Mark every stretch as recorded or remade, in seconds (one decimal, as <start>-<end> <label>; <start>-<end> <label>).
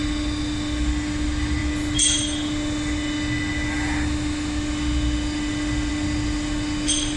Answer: 0.0-7.2 recorded